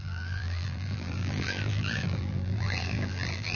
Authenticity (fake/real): fake